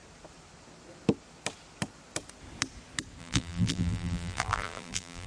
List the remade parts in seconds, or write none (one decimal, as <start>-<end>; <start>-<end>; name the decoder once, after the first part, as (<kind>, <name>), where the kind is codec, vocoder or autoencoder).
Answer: 3.2-5.3 (vocoder, BigVGAN v2)